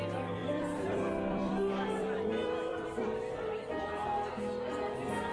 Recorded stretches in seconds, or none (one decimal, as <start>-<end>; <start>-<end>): 0.0-0.4; 3.6-5.3